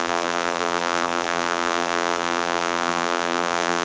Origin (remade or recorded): remade